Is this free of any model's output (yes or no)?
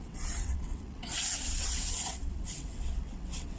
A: no